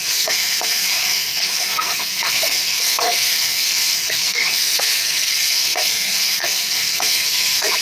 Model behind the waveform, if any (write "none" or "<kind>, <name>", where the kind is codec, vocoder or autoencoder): codec, SNAC